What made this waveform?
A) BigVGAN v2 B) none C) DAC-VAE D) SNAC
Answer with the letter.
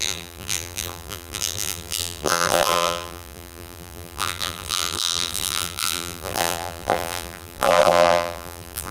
A